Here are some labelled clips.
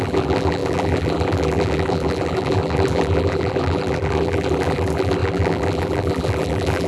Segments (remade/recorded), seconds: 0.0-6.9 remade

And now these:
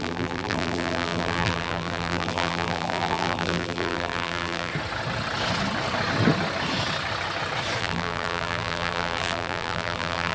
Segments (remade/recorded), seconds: 0.0-4.7 remade; 4.7-7.8 recorded; 7.8-10.3 remade

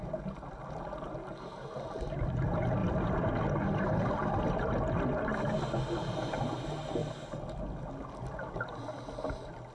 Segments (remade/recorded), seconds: 0.0-9.7 recorded

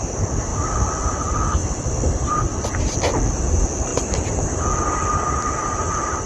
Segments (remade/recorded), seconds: 0.0-3.9 recorded; 3.9-4.6 remade; 4.6-6.3 recorded

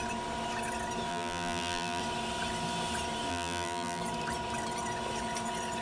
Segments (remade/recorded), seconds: 0.0-1.1 recorded; 1.1-2.0 remade; 2.0-3.3 recorded; 3.3-4.0 remade; 4.0-5.8 recorded